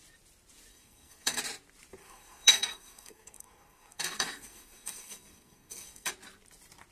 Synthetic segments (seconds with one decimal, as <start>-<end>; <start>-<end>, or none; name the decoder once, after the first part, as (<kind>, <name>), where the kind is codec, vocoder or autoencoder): 0.7-1.4 (codec, SNAC); 2.0-6.1